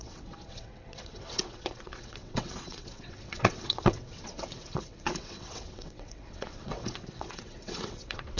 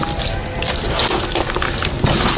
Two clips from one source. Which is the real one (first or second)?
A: second